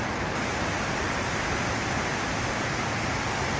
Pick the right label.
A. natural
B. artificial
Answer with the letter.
A